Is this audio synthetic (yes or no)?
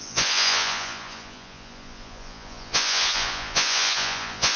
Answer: yes